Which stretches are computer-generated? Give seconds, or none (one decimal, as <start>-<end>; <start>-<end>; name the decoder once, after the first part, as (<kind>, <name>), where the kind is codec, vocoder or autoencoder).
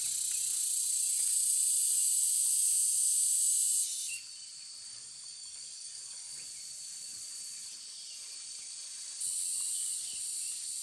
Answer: 4.9-6.3 (codec, DAC)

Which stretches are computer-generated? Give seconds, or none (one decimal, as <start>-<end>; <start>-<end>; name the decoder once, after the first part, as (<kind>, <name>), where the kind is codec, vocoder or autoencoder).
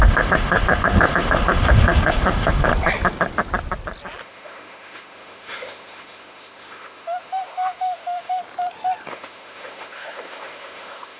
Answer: 0.0-2.7 (autoencoder, DAC-VAE); 4.2-8.4; 9.1-11.2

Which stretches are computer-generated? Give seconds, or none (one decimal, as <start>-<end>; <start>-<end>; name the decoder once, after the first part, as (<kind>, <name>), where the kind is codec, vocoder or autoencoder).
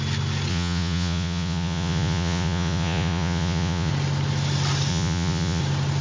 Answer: 0.5-3.9 (vocoder, Vocos); 4.9-5.6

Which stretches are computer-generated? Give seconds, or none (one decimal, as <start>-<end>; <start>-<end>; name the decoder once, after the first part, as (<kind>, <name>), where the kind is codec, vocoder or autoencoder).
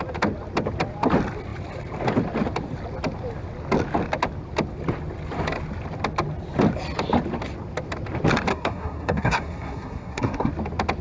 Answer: 8.5-10.5 (codec, SNAC)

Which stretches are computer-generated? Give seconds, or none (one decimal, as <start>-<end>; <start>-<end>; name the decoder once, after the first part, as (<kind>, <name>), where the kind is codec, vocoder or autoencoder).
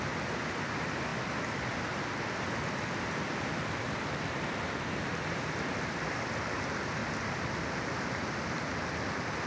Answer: none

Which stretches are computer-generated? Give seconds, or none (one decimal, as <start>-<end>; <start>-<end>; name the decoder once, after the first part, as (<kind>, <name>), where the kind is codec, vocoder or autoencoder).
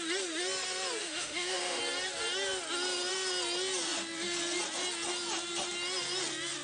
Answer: 1.0-1.8 (autoencoder, DAC-VAE)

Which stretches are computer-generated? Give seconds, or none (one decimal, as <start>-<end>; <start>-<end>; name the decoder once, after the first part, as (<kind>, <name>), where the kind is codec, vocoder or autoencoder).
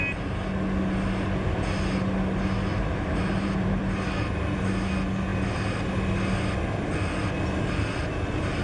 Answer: 2.7-3.8 (vocoder, BigVGAN v2)